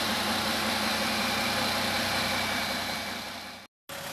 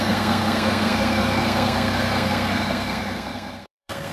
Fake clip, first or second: second